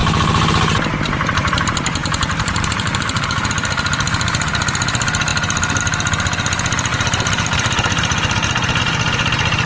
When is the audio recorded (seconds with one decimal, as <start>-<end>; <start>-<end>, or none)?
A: 0.0-2.0; 3.5-6.9; 8.8-9.7